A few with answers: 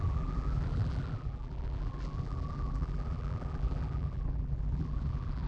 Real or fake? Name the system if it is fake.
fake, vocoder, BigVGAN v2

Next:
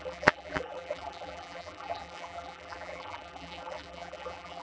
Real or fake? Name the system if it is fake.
fake, vocoder, BigVGAN v2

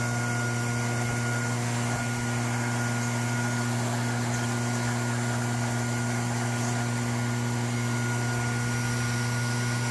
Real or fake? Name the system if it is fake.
real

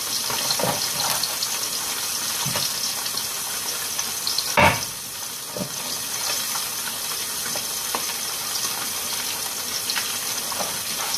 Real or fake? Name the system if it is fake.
real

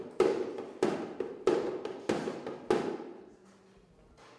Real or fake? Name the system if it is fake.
real